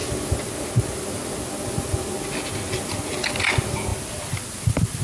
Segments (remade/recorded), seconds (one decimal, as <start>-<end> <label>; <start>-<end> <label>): 0.0-5.0 recorded